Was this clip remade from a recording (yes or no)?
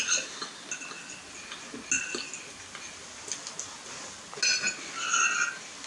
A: no